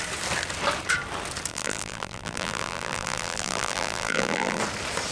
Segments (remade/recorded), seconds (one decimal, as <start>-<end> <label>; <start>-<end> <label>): 0.0-1.5 recorded; 1.5-4.6 remade; 4.6-5.1 recorded